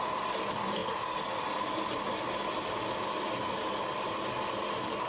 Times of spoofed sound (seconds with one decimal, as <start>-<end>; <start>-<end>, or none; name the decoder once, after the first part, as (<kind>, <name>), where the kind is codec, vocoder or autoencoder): none